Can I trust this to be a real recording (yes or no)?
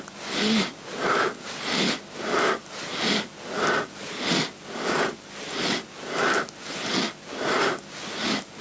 yes